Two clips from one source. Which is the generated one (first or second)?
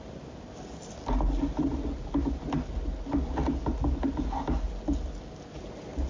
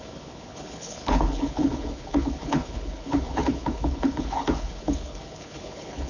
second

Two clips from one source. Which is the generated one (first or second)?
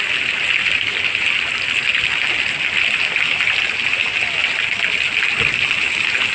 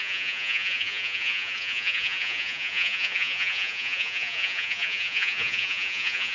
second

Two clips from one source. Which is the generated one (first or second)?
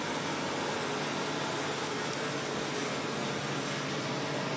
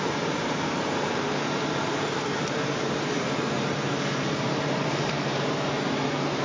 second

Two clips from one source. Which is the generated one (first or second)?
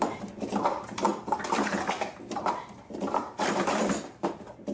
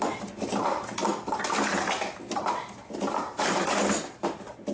first